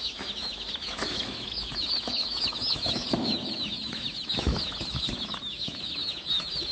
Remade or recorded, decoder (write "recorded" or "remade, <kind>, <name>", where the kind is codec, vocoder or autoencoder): remade, autoencoder, DAC-VAE